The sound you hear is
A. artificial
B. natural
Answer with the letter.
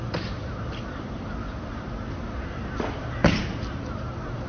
A